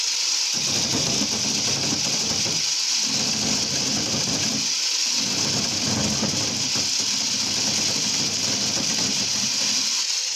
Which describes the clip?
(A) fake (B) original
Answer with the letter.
B